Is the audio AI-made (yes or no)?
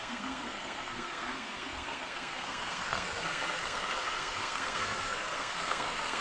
yes